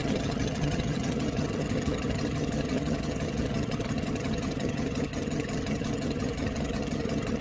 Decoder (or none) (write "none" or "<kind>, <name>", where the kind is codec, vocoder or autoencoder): vocoder, HiFi-GAN